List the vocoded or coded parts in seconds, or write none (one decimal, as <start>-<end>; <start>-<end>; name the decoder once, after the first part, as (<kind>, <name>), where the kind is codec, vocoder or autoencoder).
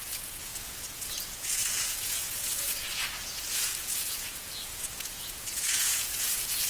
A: 0.0-6.7 (vocoder, Vocos)